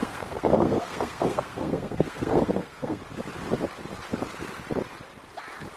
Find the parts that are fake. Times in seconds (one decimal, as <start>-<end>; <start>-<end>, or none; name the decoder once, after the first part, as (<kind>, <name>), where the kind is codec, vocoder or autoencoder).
0.0-3.0 (codec, SNAC)